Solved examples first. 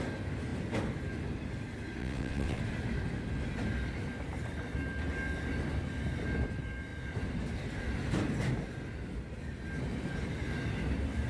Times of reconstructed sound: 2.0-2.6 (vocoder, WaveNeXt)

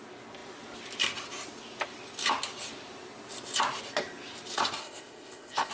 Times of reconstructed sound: 4.8-5.7 (codec, ZipCodec)

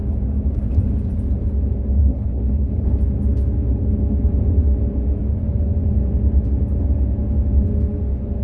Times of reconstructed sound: 2.1-2.9 (codec, HILCodec)